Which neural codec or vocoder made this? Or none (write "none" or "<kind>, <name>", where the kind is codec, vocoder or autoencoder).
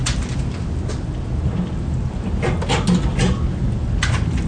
none